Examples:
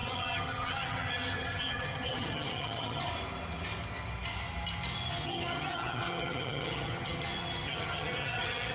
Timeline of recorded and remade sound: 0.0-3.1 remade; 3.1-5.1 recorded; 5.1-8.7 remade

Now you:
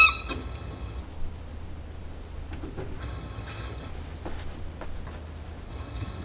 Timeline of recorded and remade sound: 0.0-1.0 remade; 1.0-3.0 recorded; 3.0-3.9 remade; 3.9-5.7 recorded; 5.7-6.2 remade

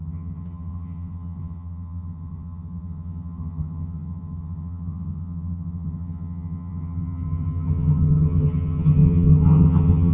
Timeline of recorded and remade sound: 0.0-10.1 remade

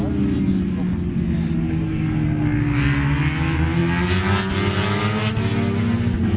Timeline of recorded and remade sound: 0.0-6.4 recorded

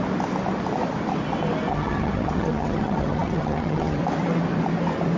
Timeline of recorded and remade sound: 0.0-1.7 recorded; 1.7-4.0 remade; 4.0-5.2 recorded